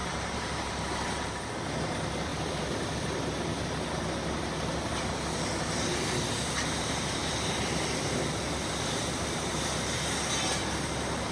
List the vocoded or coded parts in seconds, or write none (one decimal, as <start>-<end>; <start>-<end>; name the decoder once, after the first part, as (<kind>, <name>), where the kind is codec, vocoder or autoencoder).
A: 0.0-1.5 (vocoder, BigVGAN v2)